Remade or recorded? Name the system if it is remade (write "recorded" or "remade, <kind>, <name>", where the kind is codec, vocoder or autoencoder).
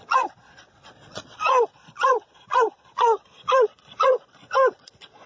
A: remade, vocoder, Vocos